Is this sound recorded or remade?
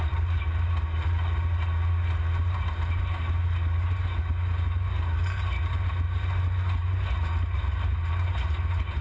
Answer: recorded